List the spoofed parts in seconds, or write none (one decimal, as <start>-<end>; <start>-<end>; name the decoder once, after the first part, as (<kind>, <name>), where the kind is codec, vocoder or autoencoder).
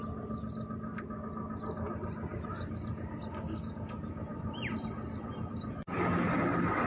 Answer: 2.3-3.2 (vocoder, BigVGAN v2); 4.3-5.8